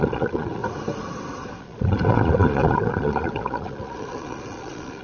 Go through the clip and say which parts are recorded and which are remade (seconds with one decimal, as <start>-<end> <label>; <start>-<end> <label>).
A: 0.0-0.6 remade; 0.6-1.6 recorded; 1.6-5.0 remade